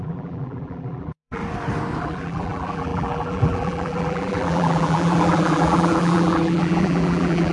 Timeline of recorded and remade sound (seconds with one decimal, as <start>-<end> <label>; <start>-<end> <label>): 0.0-1.4 remade; 1.4-2.0 recorded; 2.0-7.5 remade